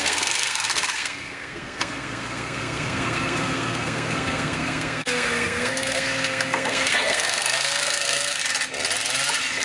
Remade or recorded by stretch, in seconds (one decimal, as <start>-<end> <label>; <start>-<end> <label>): 0.0-8.4 remade; 8.4-9.6 recorded